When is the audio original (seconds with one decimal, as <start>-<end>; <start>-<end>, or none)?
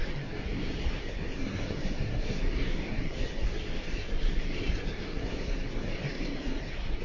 none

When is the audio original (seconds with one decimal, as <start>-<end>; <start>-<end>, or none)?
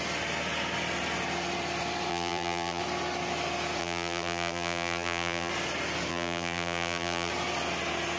0.0-2.1; 2.8-3.8; 5.5-6.1; 7.3-8.2